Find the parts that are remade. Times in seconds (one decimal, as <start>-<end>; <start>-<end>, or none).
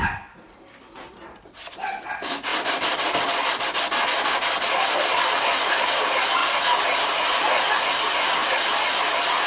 2.5-3.2